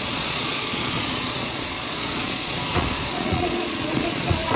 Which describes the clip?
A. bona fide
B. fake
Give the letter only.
B